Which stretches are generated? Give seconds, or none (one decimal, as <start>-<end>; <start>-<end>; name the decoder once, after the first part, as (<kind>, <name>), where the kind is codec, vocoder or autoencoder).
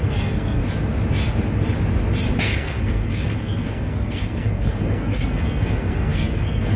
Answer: 0.0-0.6 (codec, SNAC); 2.4-6.8